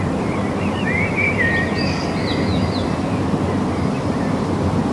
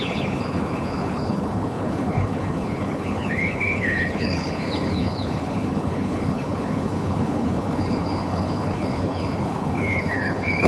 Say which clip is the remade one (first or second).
second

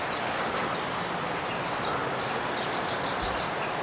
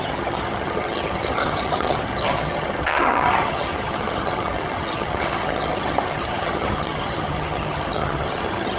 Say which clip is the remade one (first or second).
second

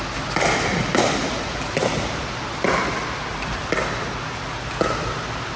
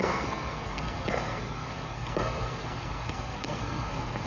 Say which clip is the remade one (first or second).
second